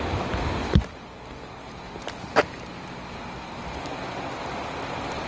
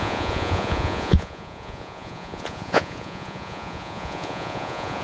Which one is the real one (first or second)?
first